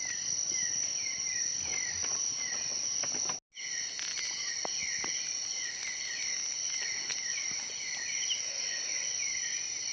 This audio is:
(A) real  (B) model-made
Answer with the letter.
A